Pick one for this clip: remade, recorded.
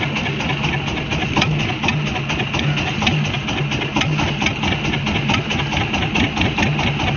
recorded